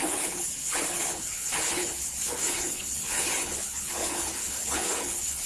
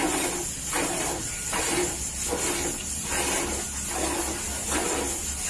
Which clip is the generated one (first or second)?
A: first